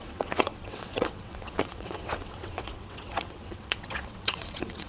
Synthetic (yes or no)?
yes